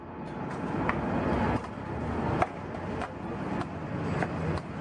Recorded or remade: recorded